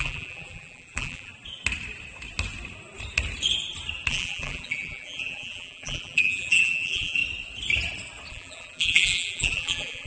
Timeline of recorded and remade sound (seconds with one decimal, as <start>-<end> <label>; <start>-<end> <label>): 0.0-1.3 remade; 1.3-4.1 recorded; 4.1-7.2 remade; 7.2-8.3 recorded; 8.3-10.1 remade

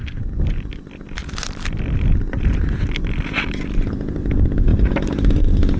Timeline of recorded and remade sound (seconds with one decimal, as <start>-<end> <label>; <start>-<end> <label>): 0.0-3.5 remade; 3.5-5.8 recorded

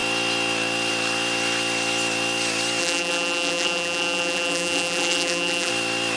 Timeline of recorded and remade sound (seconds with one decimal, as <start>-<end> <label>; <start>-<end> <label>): 0.0-2.8 recorded; 2.8-5.7 remade; 5.7-6.2 recorded

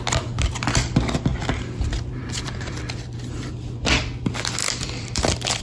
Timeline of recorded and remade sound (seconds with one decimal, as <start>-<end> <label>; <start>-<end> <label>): 0.0-1.3 recorded; 1.3-3.5 remade; 3.5-4.6 recorded; 4.6-5.6 remade

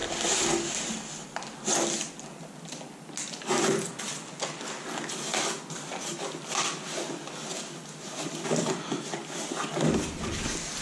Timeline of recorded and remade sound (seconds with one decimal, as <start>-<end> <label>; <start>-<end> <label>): 0.0-10.8 recorded